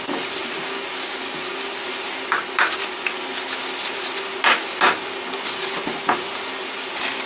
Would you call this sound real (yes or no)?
yes